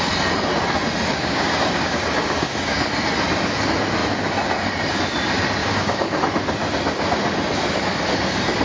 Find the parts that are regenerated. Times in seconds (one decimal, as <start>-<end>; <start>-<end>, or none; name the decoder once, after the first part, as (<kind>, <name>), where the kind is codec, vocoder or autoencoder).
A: 1.1-2.9 (codec, DAC); 5.6-6.2